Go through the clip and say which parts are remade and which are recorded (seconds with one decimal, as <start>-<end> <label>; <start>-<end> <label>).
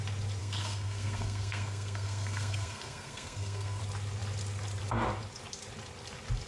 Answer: 0.0-0.4 recorded; 0.4-3.8 remade; 3.8-6.5 recorded